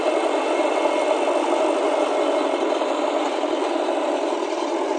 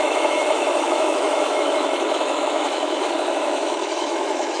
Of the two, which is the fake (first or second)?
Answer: second